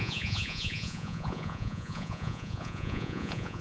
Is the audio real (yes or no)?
no